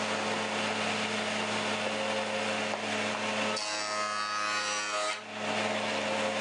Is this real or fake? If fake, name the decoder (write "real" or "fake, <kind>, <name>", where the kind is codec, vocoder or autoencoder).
real